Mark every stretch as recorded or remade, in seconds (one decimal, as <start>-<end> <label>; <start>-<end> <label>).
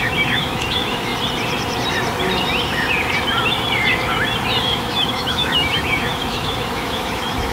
0.0-1.1 remade; 1.1-4.6 recorded; 4.6-7.5 remade